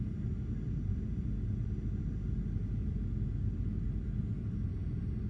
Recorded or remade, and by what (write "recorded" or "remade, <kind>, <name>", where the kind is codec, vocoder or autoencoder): recorded